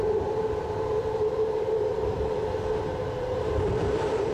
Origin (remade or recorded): remade